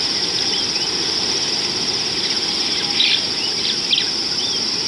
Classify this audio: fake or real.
real